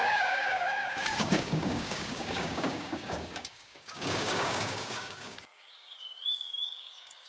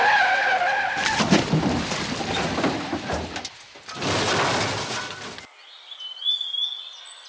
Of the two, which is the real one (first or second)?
second